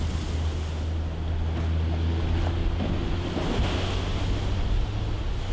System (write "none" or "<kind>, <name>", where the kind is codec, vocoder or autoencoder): none